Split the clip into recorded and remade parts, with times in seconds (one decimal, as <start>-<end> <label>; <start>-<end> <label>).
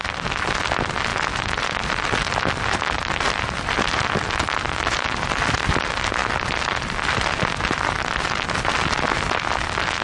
0.0-1.1 remade; 1.1-1.8 recorded; 1.8-6.2 remade; 6.2-6.7 recorded; 6.7-10.0 remade